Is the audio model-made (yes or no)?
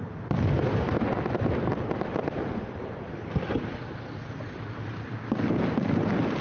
no